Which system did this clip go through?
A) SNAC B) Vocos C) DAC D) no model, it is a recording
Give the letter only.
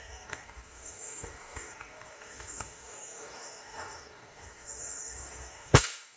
C